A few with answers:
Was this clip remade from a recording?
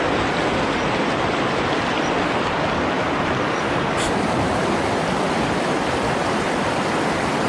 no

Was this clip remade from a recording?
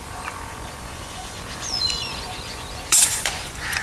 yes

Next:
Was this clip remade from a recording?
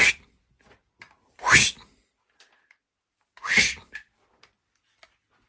no